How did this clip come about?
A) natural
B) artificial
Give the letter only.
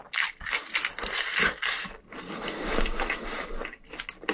A